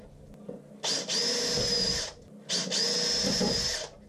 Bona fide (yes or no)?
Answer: yes